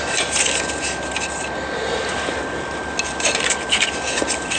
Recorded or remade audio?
recorded